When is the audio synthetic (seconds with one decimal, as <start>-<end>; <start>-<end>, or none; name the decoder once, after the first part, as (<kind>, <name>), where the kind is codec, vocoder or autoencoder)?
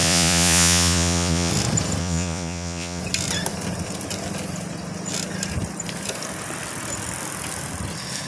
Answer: 0.0-1.5 (vocoder, Vocos); 2.0-3.0